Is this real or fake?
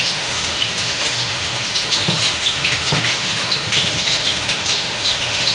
fake